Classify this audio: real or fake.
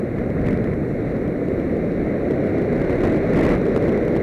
real